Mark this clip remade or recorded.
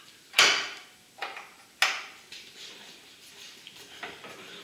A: recorded